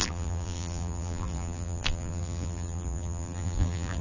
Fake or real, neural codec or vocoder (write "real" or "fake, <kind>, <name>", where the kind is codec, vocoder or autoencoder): fake, vocoder, BigVGAN v2